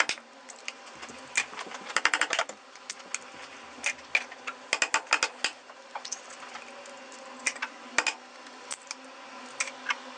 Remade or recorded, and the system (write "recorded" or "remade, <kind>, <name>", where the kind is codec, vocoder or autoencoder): recorded